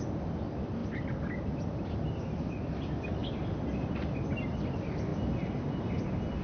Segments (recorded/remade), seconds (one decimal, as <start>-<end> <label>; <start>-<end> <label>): 0.0-6.4 recorded